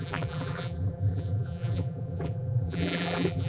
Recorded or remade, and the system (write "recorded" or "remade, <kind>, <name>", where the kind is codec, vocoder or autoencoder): remade, vocoder, BigVGAN v2